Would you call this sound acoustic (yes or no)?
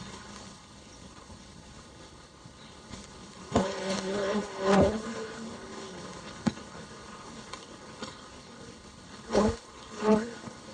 no